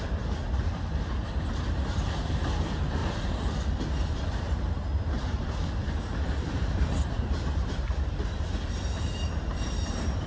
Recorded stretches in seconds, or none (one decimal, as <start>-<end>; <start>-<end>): none